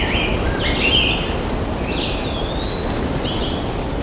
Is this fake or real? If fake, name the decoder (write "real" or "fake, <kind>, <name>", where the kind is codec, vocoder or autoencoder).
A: real